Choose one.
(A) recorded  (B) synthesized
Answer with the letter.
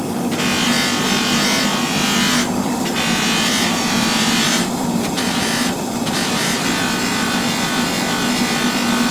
A